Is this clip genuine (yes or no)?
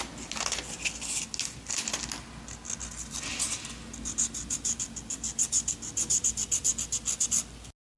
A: yes